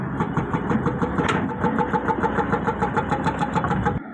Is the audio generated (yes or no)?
no